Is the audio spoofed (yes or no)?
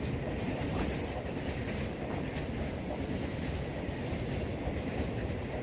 no